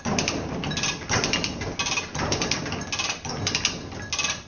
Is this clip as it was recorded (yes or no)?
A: yes